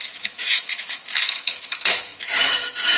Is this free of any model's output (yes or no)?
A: no